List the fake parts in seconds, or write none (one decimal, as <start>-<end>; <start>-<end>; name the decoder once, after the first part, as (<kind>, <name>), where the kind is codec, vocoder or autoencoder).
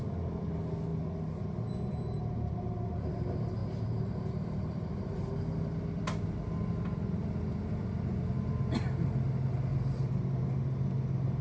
3.6-5.3 (vocoder, BigVGAN v2)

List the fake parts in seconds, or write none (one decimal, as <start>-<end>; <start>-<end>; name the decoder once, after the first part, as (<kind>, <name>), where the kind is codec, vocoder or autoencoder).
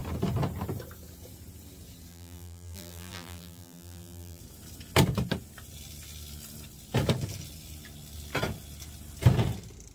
2.1-4.4 (vocoder, BigVGAN v2)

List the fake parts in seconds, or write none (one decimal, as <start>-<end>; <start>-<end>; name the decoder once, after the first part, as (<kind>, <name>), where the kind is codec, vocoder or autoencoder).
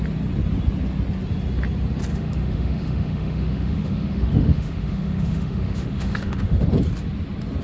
2.1-6.7 (autoencoder, DAC-VAE)